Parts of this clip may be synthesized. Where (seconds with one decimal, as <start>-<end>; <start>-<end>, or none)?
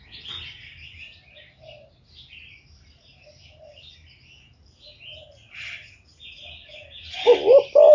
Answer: none